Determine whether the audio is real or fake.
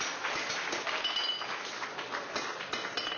real